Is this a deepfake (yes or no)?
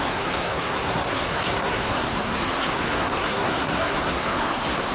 yes